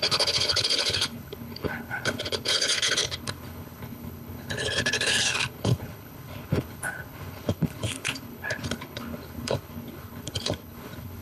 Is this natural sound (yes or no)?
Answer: no